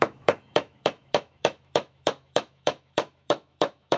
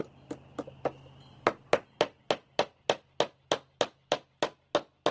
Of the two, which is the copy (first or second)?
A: first